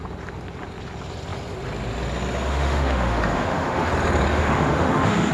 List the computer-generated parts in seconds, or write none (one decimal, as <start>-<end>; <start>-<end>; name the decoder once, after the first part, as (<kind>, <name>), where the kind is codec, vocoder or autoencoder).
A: 2.5-3.9 (autoencoder, DAC-VAE); 4.3-5.3